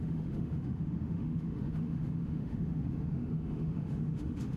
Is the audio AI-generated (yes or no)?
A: yes